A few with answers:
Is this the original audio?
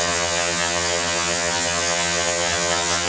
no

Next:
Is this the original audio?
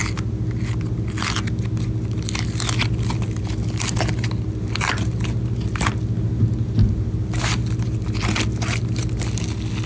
yes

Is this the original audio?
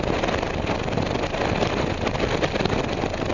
yes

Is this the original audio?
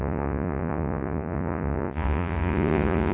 no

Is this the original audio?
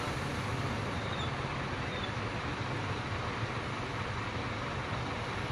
yes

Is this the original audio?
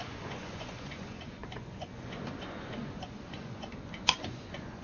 no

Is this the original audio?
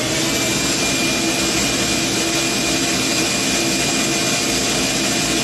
yes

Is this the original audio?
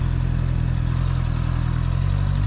yes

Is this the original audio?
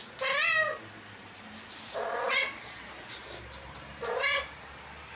yes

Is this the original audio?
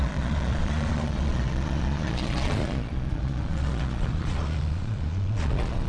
no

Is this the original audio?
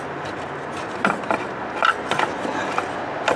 yes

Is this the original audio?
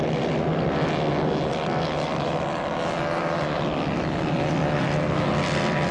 yes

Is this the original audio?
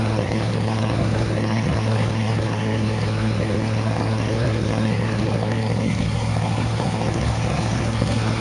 no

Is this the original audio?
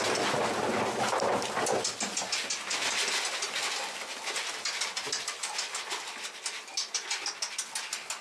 yes